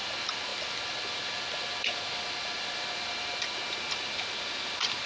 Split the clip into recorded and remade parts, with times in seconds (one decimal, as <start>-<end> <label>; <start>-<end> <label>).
0.0-5.1 recorded